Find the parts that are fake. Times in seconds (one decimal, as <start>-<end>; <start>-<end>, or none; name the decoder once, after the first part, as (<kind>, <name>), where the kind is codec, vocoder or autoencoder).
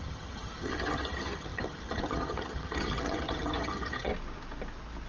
0.0-4.1 (vocoder, HiFi-GAN)